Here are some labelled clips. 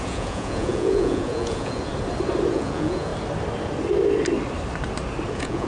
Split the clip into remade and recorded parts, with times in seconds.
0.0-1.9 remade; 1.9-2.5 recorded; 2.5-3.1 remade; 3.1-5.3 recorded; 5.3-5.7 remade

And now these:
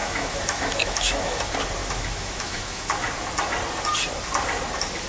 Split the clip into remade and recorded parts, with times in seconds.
0.0-1.4 remade; 1.4-1.8 recorded; 1.8-3.1 remade; 3.1-5.1 recorded

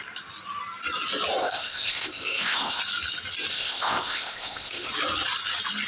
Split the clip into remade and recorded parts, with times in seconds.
0.0-1.4 recorded; 1.4-2.8 remade; 2.8-3.5 recorded; 3.5-4.9 remade; 4.9-5.9 recorded

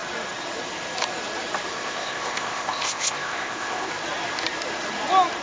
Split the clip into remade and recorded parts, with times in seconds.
0.0-1.7 recorded; 1.7-3.9 remade; 3.9-5.4 recorded

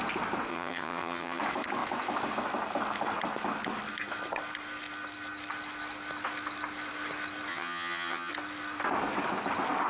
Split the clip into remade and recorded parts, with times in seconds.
0.0-0.5 recorded; 0.5-1.4 remade; 1.4-7.5 recorded; 7.5-8.3 remade; 8.3-9.9 recorded

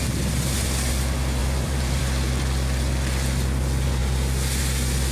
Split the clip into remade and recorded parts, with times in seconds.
0.0-1.4 recorded; 1.4-2.0 remade; 2.0-5.1 recorded